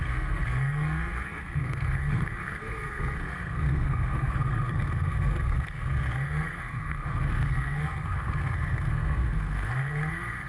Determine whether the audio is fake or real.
fake